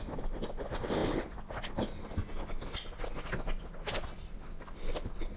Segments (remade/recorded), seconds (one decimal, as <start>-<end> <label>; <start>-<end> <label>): 0.0-5.4 recorded

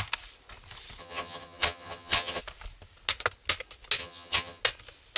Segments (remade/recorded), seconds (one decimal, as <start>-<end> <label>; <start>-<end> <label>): 0.0-1.0 recorded; 1.0-2.4 remade; 2.4-4.0 recorded; 4.0-4.6 remade; 4.6-5.2 recorded